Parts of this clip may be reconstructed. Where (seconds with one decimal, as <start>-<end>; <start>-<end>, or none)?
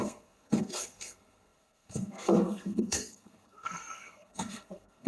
0.0-5.1